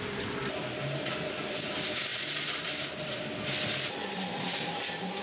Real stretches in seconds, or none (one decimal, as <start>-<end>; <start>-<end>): 0.0-0.8; 1.3-4.0; 4.7-5.2